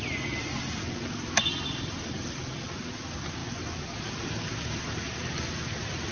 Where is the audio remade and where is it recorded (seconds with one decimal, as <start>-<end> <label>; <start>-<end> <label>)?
0.0-6.1 recorded